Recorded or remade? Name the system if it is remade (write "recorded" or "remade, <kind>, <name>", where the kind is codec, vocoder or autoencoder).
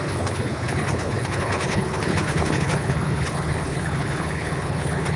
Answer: remade, codec, HILCodec